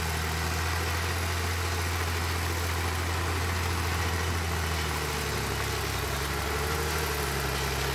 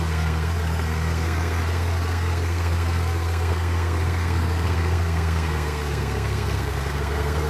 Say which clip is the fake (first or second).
second